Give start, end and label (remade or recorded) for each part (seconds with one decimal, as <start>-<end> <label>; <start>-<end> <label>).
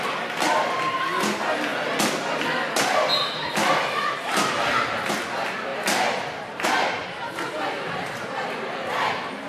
0.0-9.5 recorded